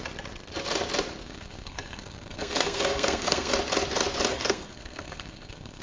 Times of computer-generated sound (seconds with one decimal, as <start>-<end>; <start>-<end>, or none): 1.2-3.5; 4.3-5.8